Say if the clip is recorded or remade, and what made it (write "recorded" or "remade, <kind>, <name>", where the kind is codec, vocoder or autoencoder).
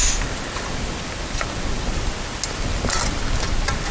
recorded